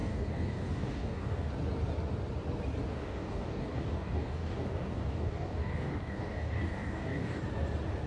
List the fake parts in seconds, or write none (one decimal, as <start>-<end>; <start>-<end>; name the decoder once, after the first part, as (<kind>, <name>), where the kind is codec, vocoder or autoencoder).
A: 0.0-1.5 (codec, DAC); 2.9-7.4